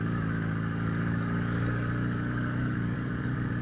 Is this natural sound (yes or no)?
no